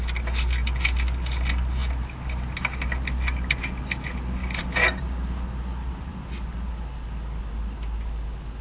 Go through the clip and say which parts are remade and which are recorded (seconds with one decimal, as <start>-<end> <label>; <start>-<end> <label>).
0.0-4.4 recorded; 4.4-5.0 remade; 5.0-8.6 recorded